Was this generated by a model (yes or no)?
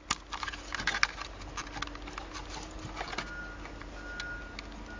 no